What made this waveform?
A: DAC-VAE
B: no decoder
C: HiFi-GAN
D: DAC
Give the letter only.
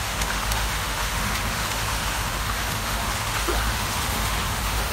A